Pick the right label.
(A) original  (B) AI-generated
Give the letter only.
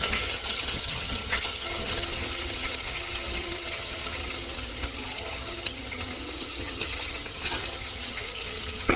B